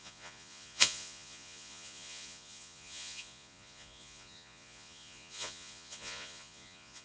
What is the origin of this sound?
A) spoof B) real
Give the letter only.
A